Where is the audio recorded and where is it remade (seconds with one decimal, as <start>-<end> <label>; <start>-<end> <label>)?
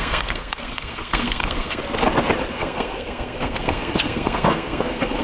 0.0-1.8 remade; 1.8-2.5 recorded; 2.5-5.2 remade